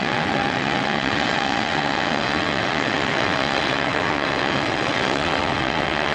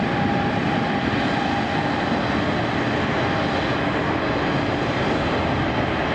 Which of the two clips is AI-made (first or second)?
first